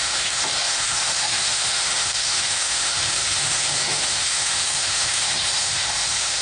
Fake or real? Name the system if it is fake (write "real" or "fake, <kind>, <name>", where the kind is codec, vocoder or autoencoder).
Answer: fake, autoencoder, DAC-VAE